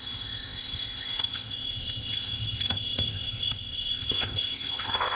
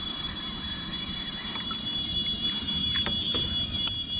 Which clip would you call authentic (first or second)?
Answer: second